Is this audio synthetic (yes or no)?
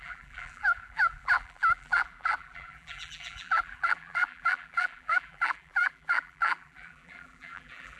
yes